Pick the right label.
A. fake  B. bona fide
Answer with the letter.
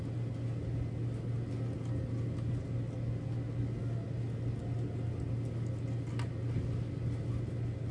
B